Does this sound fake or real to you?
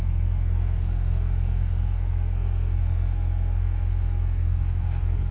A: fake